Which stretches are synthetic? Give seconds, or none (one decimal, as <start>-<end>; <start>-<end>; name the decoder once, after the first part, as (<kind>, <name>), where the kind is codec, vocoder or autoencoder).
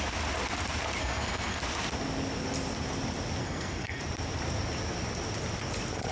1.0-1.6 (codec, SNAC); 3.4-4.0